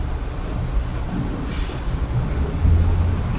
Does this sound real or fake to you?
real